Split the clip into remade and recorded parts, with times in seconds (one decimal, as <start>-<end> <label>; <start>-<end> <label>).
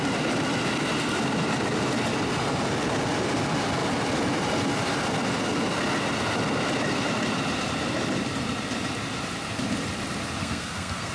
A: 0.0-10.4 recorded; 10.4-11.1 remade